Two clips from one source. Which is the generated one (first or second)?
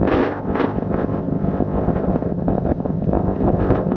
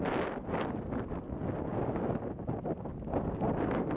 first